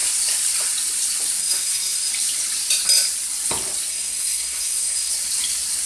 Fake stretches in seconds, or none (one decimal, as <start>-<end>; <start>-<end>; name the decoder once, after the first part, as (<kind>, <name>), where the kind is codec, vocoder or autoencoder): 1.4-2.1 (codec, SNAC); 3.9-5.1